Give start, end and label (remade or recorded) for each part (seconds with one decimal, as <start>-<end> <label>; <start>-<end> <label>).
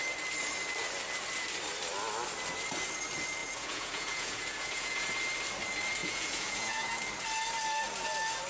0.0-3.4 recorded; 3.4-5.0 remade; 5.0-6.0 recorded; 6.0-6.9 remade; 6.9-8.5 recorded